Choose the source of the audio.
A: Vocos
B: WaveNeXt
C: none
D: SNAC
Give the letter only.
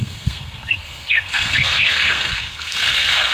D